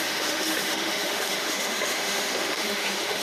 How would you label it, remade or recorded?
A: remade